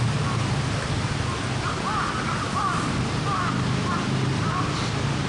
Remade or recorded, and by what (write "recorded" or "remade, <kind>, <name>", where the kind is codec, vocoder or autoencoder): recorded